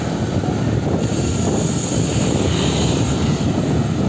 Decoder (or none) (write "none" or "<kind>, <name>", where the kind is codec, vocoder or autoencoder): none